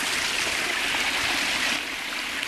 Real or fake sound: real